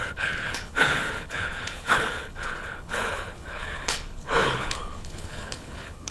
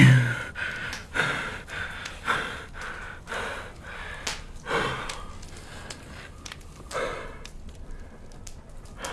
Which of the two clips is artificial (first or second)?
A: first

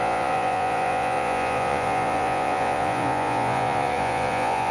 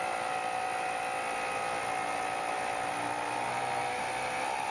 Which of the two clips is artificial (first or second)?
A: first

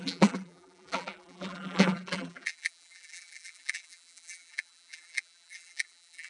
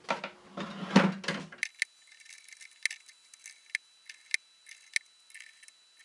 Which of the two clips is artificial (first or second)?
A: first